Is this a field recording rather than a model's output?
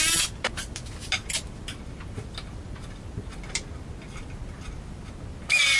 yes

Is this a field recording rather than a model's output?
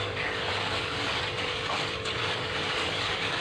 no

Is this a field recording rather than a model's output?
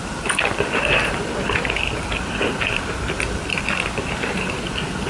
yes